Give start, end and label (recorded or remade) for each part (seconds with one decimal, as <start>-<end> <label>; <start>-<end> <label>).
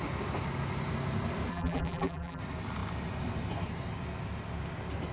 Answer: 0.0-1.5 recorded; 1.5-2.4 remade; 2.4-5.1 recorded